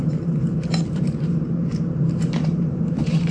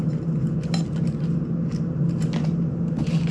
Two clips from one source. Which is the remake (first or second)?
first